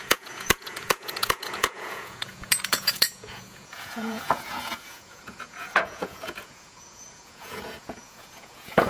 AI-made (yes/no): yes